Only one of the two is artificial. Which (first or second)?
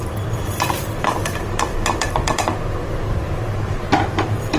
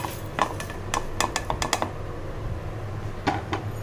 first